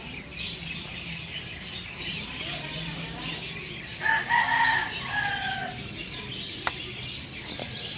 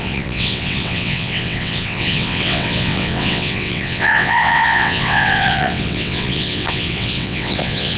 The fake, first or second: second